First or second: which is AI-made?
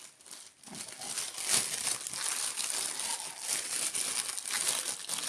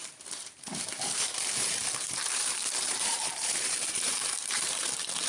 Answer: second